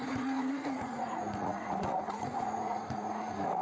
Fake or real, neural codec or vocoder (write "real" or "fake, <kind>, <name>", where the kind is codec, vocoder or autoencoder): fake, vocoder, Vocos